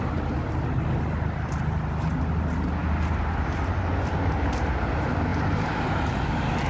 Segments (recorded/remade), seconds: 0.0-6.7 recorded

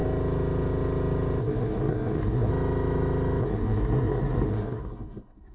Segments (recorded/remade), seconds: 0.0-1.4 recorded; 1.4-2.5 remade; 2.5-3.4 recorded; 3.4-5.5 remade

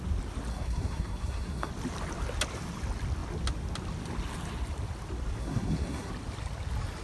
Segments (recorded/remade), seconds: 0.0-0.5 recorded; 0.5-1.7 remade; 1.7-5.4 recorded; 5.4-6.1 remade; 6.1-7.0 recorded

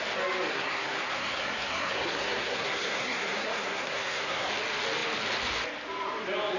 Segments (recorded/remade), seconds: 0.0-0.5 recorded; 0.5-4.5 remade; 4.5-6.6 recorded

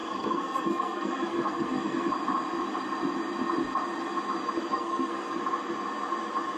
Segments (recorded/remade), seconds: 0.0-2.1 remade; 2.1-4.7 recorded; 4.7-5.4 remade; 5.4-6.6 recorded

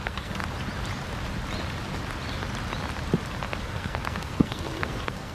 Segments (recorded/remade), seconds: 0.0-0.4 remade; 0.4-3.6 recorded; 3.6-5.3 remade